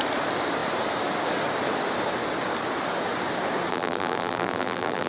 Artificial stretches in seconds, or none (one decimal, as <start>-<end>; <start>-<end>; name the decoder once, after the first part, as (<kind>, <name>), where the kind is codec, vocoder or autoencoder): 3.7-5.1 (vocoder, BigVGAN v2)